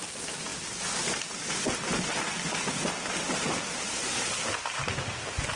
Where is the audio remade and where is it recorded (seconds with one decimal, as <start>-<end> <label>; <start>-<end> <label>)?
0.0-5.6 recorded